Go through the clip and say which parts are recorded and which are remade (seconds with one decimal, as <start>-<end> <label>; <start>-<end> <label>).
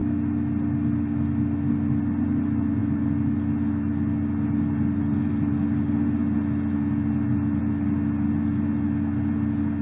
0.0-9.8 recorded